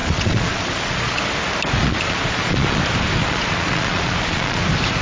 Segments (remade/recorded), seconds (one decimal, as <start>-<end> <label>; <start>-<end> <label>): 0.0-1.2 remade; 1.2-1.8 recorded; 1.8-2.8 remade; 2.8-3.2 recorded; 3.2-4.6 remade; 4.6-5.0 recorded